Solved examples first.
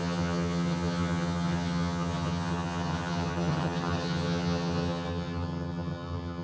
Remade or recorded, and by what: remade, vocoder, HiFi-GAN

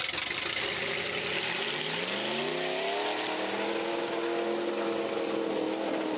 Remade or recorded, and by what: recorded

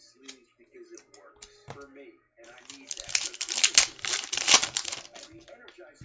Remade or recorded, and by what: recorded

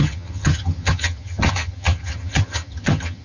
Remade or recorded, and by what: remade, vocoder, HiFi-GAN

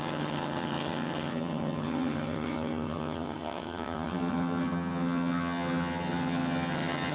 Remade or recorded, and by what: remade, vocoder, HiFi-GAN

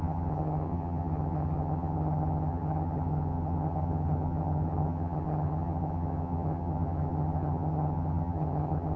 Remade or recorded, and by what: remade, vocoder, HiFi-GAN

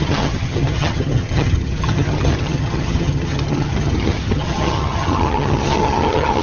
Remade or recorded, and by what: remade, vocoder, HiFi-GAN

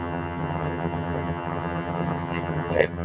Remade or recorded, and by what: remade, vocoder, HiFi-GAN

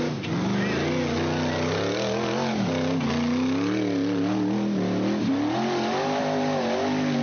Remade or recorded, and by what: recorded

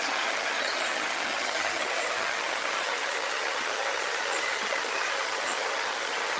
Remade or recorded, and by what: remade, vocoder, HiFi-GAN